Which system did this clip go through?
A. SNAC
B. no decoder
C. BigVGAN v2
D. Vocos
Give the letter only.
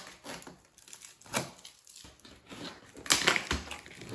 B